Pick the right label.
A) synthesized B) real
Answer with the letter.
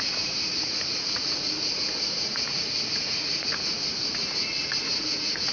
A